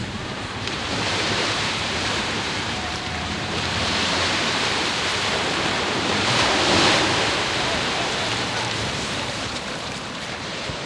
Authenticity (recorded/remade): remade